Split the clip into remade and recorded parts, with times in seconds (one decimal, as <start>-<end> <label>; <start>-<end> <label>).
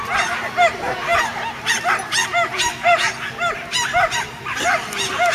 0.0-5.3 recorded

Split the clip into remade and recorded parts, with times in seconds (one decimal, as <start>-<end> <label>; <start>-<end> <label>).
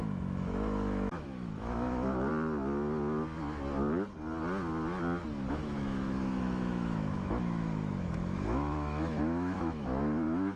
0.0-2.3 remade; 2.3-5.5 recorded; 5.5-10.6 remade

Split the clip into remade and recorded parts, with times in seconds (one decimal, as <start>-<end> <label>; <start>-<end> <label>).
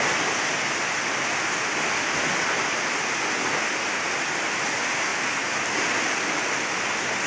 0.0-7.3 recorded